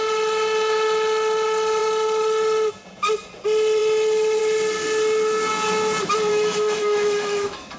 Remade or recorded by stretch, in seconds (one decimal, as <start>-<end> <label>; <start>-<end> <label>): 0.0-6.3 recorded; 6.3-7.8 remade